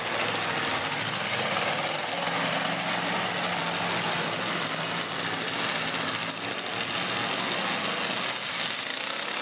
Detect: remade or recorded recorded